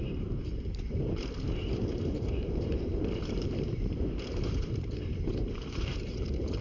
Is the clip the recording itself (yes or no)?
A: no